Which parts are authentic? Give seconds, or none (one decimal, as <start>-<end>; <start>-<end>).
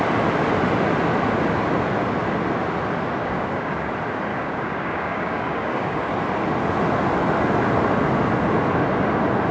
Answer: 0.0-3.2; 3.9-4.3; 6.1-9.5